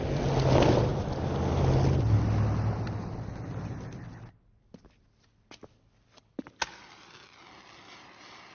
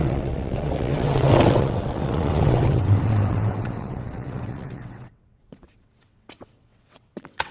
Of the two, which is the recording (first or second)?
first